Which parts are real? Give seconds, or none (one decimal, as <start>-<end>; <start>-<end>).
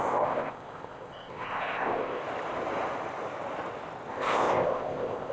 2.2-4.1